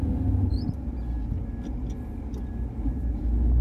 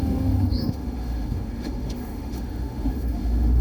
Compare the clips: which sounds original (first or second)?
first